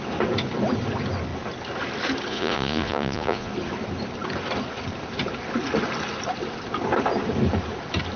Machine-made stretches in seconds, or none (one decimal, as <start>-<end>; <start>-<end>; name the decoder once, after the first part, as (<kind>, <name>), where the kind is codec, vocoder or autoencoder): 2.3-3.5 (vocoder, Vocos)

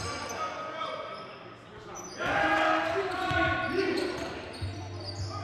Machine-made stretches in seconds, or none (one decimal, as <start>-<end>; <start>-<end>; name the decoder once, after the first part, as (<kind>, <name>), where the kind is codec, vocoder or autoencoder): none

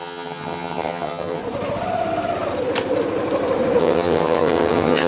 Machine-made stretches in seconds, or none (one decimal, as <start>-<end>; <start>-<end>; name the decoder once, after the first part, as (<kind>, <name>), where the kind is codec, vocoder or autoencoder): 0.0-1.4 (vocoder, HiFi-GAN); 3.8-5.1

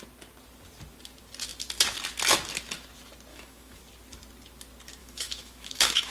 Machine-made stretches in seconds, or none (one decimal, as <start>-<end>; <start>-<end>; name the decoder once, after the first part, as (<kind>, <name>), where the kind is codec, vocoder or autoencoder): 3.3-3.8 (autoencoder, DAC-VAE); 5.0-6.1